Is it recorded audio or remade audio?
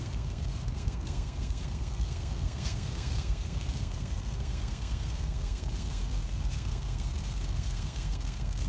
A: remade